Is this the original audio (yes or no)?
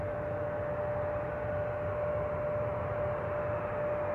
yes